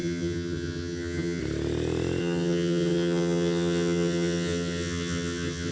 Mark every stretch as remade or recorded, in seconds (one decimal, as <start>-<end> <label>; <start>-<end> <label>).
0.0-1.4 remade; 1.4-2.2 recorded; 2.2-5.7 remade